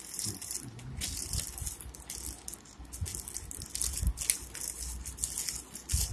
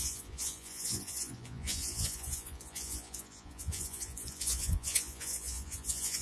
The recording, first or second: first